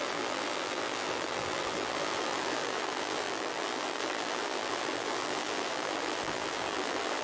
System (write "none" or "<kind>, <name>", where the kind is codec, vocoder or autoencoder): vocoder, BigVGAN v2